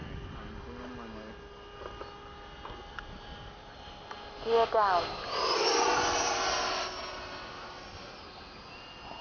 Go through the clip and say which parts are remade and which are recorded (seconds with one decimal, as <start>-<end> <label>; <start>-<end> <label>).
0.0-9.2 recorded